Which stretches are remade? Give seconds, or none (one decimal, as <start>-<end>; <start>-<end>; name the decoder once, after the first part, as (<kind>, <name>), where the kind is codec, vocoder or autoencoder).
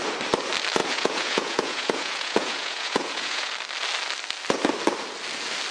0.8-3.5 (vocoder, Vocos)